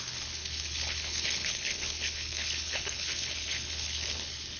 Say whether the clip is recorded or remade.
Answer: remade